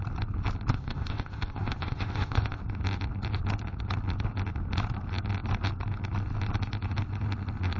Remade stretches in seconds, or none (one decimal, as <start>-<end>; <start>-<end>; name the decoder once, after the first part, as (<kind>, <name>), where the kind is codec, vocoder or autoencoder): 0.7-2.6 (codec, ZipCodec)